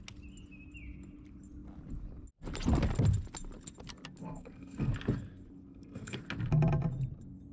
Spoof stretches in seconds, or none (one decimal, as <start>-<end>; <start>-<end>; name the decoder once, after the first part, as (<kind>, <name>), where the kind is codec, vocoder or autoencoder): 4.2-4.9 (codec, SNAC); 5.7-6.2